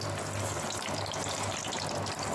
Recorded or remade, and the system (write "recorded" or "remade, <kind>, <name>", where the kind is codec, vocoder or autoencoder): recorded